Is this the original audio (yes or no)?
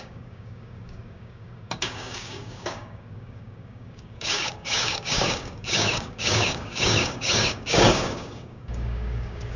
no